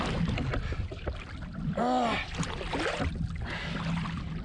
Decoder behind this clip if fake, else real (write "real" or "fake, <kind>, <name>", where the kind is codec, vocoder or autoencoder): real